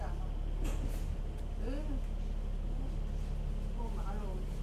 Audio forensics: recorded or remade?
recorded